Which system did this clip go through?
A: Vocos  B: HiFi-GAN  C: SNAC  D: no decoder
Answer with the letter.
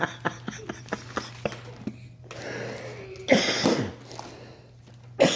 D